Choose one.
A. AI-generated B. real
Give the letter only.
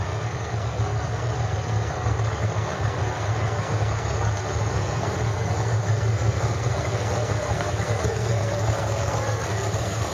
A